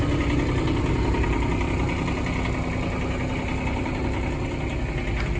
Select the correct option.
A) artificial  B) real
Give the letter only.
B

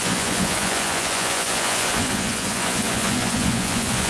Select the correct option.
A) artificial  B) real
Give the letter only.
A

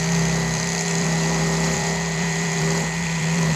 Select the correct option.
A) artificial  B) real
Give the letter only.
A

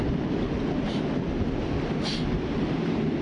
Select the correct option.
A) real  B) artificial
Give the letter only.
A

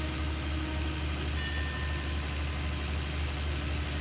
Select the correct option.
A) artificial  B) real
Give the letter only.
B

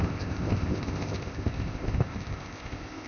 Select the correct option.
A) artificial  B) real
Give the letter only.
A